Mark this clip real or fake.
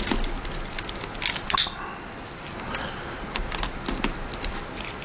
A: real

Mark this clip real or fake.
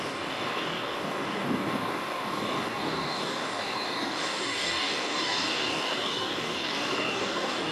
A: fake